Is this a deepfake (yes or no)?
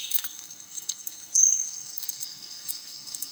yes